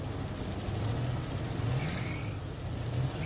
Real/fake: real